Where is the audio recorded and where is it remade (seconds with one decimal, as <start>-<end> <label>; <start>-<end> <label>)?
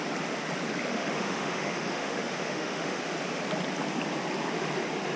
0.0-0.9 recorded; 0.9-3.0 remade; 3.0-5.2 recorded